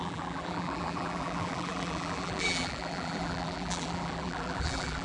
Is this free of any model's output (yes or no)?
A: no